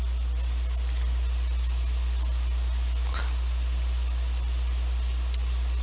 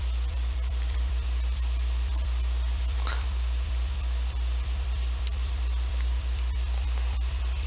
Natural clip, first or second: first